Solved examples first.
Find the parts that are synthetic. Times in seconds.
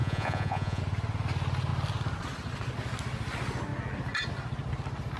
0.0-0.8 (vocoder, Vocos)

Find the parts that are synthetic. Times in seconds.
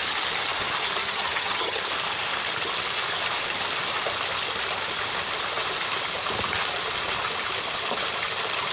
1.0-1.8 (vocoder, HiFi-GAN)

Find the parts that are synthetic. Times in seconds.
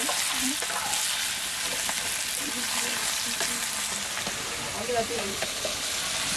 5.3-6.0 (codec, HILCodec)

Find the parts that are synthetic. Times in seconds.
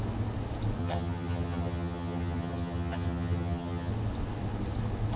0.8-3.9 (vocoder, HiFi-GAN)